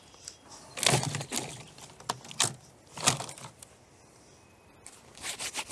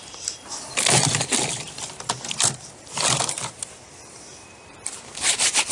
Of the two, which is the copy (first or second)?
second